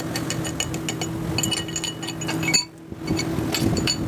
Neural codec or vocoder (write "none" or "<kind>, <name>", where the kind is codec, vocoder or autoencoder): none